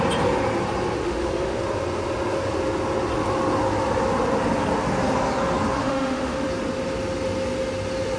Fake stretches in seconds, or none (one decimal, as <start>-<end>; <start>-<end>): 1.0-1.6; 5.7-6.5